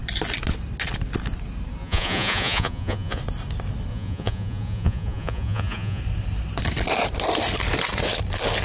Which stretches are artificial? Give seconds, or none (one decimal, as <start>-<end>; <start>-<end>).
1.8-3.2; 3.9-6.0